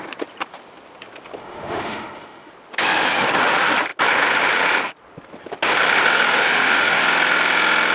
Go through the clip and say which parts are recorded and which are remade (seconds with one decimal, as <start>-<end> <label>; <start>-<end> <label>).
0.0-1.4 recorded; 1.4-2.5 remade; 2.5-6.4 recorded; 6.4-7.0 remade; 7.0-7.9 recorded